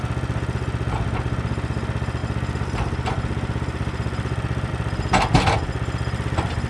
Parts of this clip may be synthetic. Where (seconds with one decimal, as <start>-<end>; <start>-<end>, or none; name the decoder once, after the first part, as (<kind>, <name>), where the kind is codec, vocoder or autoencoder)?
2.2-4.7 (vocoder, BigVGAN v2)